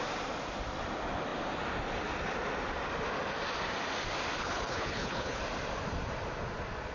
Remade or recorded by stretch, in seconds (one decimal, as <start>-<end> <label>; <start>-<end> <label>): 0.0-4.4 recorded; 4.4-5.4 remade; 5.4-6.9 recorded